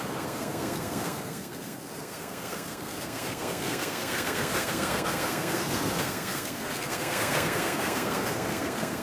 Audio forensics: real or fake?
fake